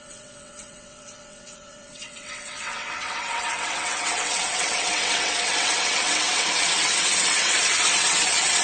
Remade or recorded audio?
remade